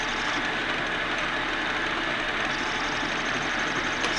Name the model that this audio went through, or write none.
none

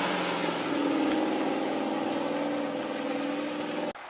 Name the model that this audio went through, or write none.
none